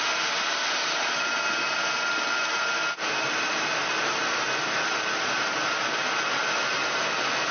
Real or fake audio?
real